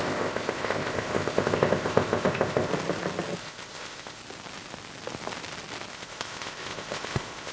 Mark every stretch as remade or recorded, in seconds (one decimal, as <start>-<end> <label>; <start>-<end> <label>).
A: 0.0-2.7 remade; 2.7-3.4 recorded; 3.4-4.2 remade; 4.2-5.9 recorded; 5.9-7.5 remade